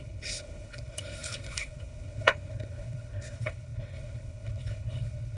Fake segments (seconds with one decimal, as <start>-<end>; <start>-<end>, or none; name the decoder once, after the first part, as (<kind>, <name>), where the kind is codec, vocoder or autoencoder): 0.0-5.4 (codec, HILCodec)